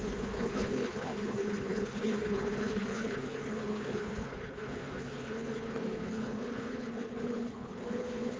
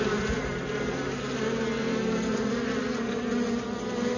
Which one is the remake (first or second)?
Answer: first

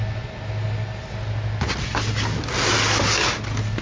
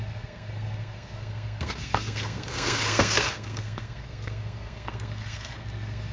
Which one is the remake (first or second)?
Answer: second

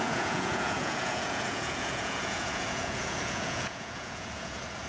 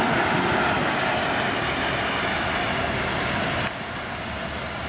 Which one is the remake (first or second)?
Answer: first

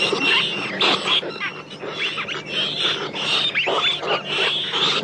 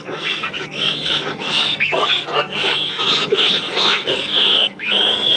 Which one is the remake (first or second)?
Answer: second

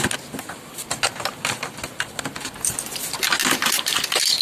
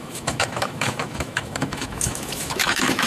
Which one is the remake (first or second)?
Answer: second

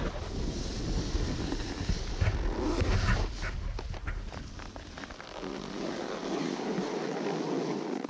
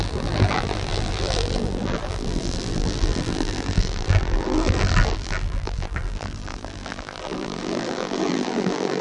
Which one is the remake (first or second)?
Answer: second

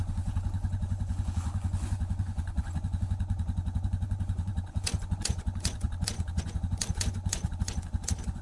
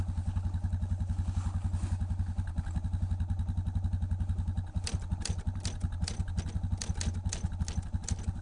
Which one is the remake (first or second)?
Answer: first